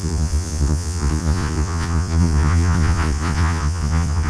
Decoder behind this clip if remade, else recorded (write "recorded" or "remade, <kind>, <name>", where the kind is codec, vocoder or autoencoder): remade, vocoder, Vocos